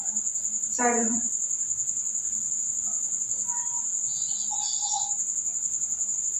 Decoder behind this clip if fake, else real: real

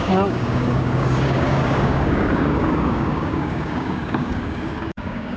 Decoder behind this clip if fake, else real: fake, codec, DAC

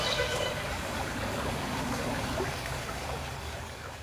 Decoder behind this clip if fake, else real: fake, codec, DAC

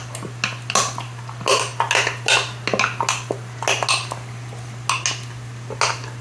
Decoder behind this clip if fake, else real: real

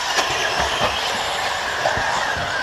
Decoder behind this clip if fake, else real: real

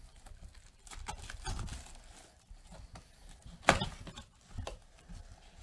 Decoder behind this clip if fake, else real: real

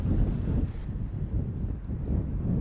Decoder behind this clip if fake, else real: real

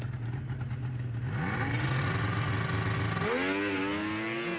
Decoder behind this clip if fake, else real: real